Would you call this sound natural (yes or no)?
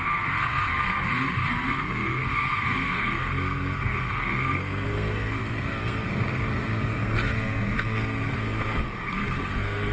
no